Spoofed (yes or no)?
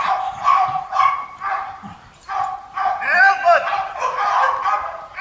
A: no